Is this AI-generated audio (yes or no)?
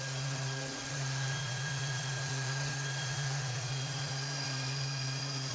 yes